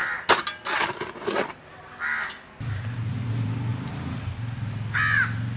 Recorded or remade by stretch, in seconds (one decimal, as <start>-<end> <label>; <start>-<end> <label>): 0.0-5.6 recorded